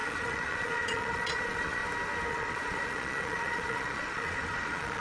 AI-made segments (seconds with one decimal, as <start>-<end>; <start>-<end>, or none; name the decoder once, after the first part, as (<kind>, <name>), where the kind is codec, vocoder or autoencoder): 0.0-1.8 (vocoder, Vocos); 2.3-5.0